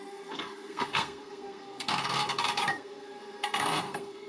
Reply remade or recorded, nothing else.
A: remade